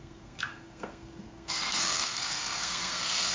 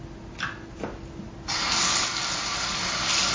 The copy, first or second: first